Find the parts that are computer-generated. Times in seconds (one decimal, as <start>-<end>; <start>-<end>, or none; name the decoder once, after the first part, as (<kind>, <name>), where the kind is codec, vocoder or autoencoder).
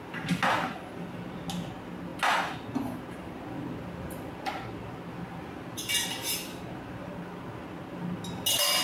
none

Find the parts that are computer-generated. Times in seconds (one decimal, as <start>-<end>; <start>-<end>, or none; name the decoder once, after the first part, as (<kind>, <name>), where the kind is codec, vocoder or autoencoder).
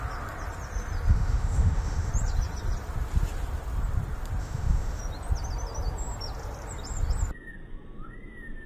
1.1-2.1 (autoencoder, DAC-VAE); 4.4-5.0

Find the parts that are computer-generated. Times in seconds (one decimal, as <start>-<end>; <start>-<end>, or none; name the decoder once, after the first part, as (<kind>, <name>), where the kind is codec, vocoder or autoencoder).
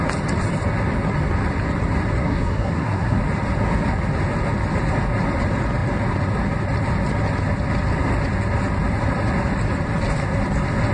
2.2-3.2 (codec, SNAC)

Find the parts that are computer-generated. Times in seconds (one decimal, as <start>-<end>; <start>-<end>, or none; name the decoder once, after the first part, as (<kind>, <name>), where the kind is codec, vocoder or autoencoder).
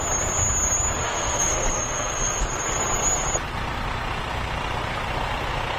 1.0-2.4 (codec, SNAC)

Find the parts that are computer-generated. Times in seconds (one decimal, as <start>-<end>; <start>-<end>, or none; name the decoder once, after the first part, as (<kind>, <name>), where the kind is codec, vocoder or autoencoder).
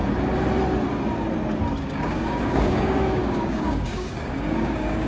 1.8-5.1 (codec, DAC)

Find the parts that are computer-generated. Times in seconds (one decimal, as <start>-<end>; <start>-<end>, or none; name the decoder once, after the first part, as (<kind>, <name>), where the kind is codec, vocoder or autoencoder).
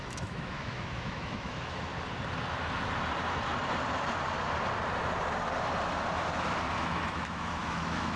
0.0-1.9 (autoencoder, DAC-VAE); 6.8-8.2